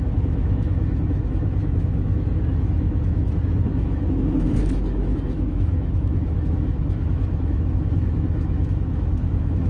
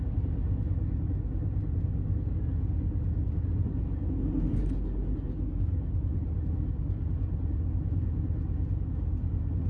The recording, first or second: second